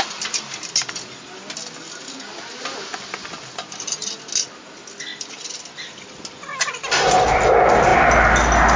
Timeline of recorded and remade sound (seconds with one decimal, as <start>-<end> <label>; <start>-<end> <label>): 0.0-8.8 recorded